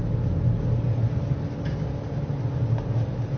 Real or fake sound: real